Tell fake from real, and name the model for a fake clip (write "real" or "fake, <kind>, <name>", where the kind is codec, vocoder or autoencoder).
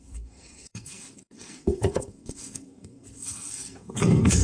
fake, codec, SNAC